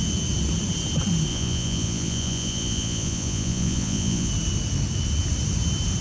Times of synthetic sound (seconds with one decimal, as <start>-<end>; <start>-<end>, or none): 1.3-4.3

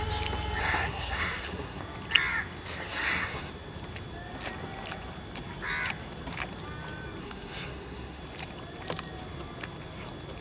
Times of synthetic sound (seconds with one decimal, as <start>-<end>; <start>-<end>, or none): 0.6-1.8; 2.9-3.5; 7.2-8.2

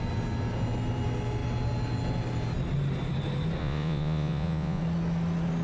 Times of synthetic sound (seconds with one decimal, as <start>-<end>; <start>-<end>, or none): 3.6-4.8